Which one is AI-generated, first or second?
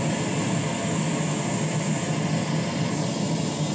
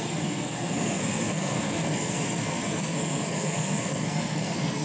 second